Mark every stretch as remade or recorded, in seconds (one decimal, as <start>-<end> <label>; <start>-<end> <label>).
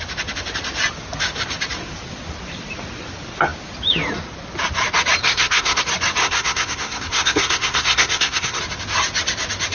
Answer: 0.0-5.2 recorded; 5.2-5.8 remade; 5.8-6.2 recorded; 6.2-8.6 remade; 8.6-9.7 recorded